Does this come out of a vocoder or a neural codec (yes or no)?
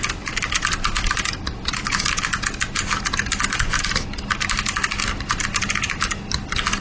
no